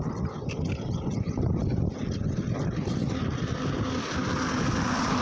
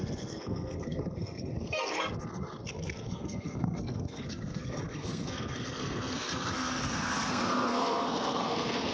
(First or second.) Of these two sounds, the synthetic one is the second